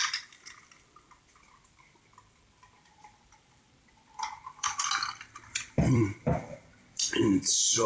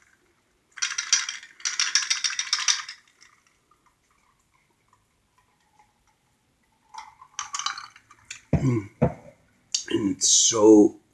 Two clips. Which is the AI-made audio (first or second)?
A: first